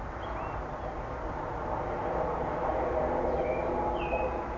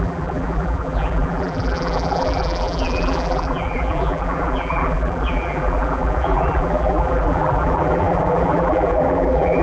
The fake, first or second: second